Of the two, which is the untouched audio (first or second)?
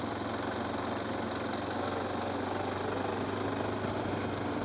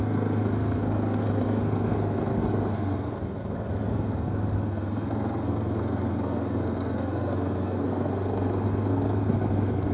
first